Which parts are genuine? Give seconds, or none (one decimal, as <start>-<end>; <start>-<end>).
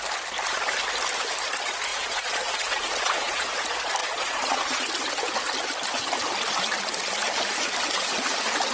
0.0-1.9; 3.5-4.0; 4.9-8.7